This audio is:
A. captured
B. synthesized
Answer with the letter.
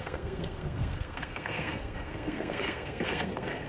B